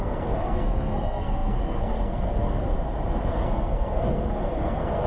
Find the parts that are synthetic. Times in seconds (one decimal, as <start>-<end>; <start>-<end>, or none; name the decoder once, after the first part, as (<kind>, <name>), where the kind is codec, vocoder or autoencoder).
0.0-2.7 (codec, SNAC); 3.3-5.1